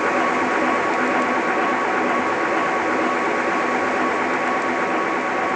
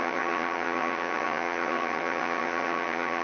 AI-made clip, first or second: second